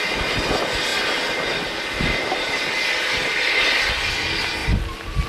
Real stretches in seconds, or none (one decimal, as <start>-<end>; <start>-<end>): 0.0-0.9; 4.1-4.6